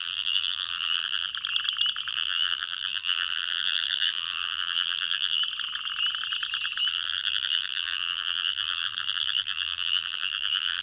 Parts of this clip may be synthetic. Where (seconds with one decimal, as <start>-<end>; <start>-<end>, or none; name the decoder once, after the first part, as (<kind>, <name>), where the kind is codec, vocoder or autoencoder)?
0.0-1.3 (vocoder, BigVGAN v2); 2.1-5.4; 6.9-10.8